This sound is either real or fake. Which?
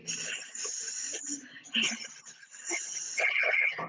real